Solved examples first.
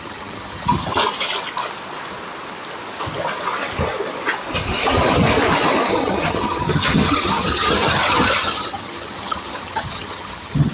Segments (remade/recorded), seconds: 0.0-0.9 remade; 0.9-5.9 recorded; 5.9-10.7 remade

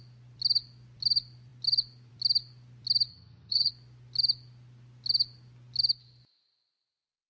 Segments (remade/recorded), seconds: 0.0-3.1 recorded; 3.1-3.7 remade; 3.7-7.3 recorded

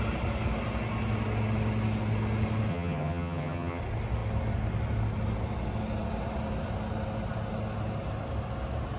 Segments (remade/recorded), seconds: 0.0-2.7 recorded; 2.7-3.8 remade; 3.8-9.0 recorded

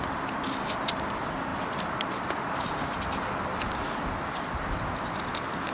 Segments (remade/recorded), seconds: 0.0-5.7 recorded